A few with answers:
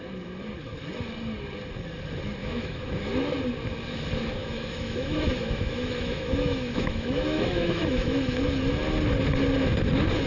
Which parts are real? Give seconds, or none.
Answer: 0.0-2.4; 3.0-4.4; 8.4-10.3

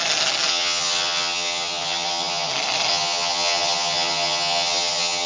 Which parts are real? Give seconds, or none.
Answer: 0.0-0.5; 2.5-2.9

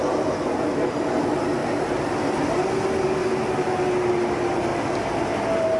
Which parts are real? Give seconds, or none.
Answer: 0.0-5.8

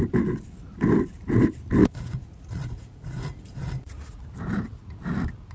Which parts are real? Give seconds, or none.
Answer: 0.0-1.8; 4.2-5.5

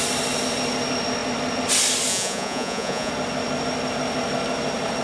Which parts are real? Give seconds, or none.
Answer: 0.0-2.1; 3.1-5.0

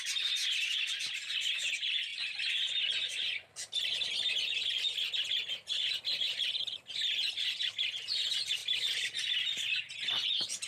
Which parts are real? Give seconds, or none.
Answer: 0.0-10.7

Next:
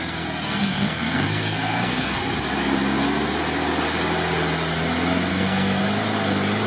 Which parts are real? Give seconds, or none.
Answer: 2.2-5.3; 5.8-6.7

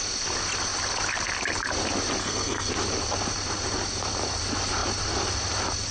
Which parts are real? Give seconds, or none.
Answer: 0.0-2.2; 2.7-5.9